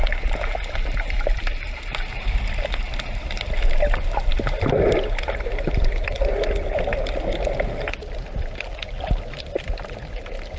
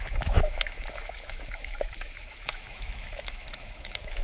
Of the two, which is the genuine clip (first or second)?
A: first